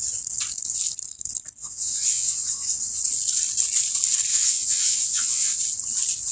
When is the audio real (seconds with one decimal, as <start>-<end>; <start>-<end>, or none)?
0.0-1.6; 3.0-4.3; 5.6-6.3

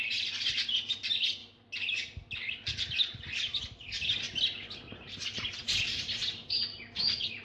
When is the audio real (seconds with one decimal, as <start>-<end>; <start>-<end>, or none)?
0.0-7.4

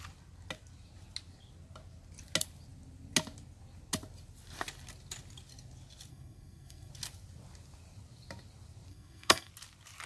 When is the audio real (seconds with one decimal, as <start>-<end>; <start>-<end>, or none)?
0.0-6.1; 6.9-8.9; 9.5-10.1

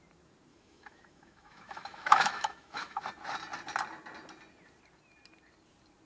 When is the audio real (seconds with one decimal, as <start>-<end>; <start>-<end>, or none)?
0.0-0.5; 3.0-6.1

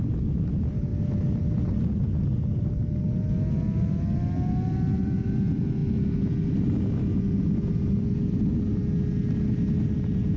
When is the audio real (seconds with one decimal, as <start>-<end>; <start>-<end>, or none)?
0.0-10.4